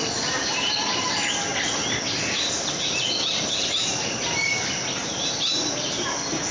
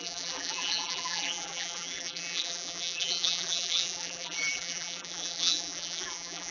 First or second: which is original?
first